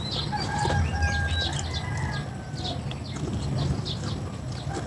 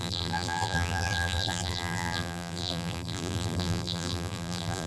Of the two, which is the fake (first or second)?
second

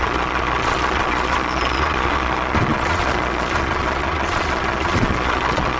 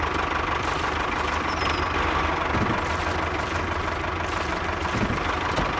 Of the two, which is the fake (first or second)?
first